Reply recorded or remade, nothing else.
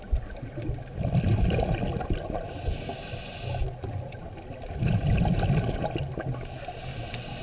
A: recorded